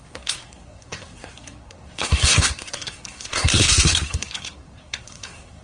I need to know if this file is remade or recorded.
remade